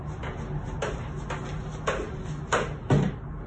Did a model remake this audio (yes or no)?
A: no